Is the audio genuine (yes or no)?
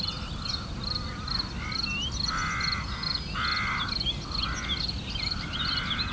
yes